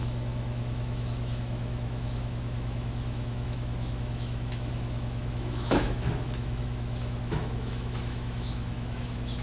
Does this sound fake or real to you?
fake